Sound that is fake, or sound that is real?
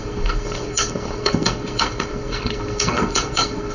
fake